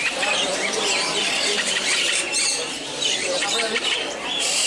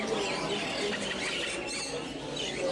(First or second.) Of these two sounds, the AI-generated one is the first